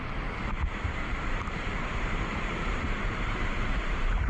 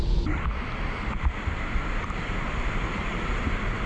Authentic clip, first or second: second